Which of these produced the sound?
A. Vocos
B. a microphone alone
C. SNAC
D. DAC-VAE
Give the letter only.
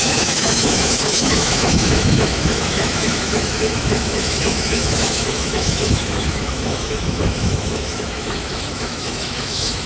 D